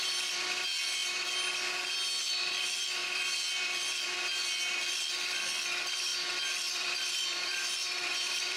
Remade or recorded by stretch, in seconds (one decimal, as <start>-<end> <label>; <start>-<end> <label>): 0.0-1.0 remade; 1.0-2.2 recorded; 2.2-6.1 remade; 6.1-6.6 recorded; 6.6-8.6 remade